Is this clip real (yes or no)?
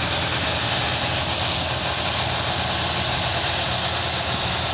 yes